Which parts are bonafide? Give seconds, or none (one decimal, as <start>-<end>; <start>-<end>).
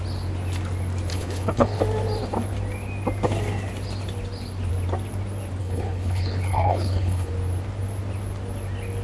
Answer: 0.0-1.1; 1.8-5.6; 7.3-9.0